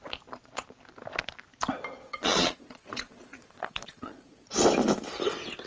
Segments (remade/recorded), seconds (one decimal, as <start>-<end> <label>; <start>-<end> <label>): 0.0-2.1 recorded; 2.1-4.5 remade; 4.5-5.7 recorded